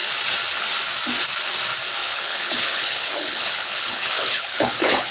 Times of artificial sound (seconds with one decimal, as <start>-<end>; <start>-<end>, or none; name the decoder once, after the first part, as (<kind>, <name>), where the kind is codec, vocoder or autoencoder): 2.0-5.1 (codec, HILCodec)